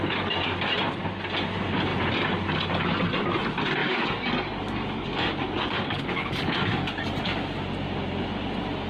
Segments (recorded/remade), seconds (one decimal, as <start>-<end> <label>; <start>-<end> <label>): 0.0-3.8 recorded; 3.8-7.2 remade; 7.2-8.9 recorded